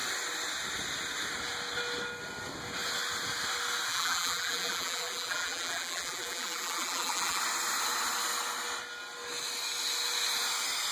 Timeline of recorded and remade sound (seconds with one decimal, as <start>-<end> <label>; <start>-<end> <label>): 0.0-3.9 recorded; 3.9-7.4 remade; 7.4-10.9 recorded